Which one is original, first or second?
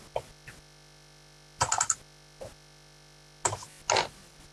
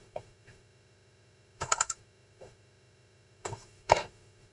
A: first